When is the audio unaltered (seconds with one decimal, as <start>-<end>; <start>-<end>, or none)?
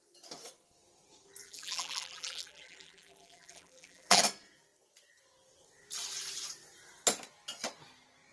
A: 0.0-1.4; 4.2-8.3